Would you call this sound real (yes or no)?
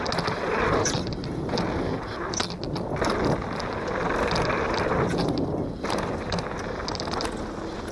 yes